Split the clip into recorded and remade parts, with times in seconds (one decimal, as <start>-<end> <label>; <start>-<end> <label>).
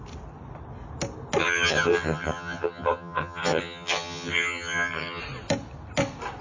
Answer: 0.0-1.4 recorded; 1.4-5.2 remade; 5.2-6.4 recorded